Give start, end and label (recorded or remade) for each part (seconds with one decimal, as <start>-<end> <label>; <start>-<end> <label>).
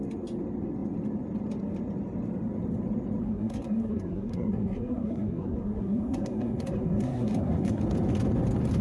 0.0-3.2 recorded; 3.2-7.8 remade; 7.8-8.8 recorded